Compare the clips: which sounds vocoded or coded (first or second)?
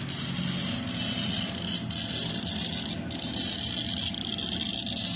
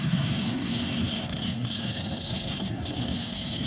second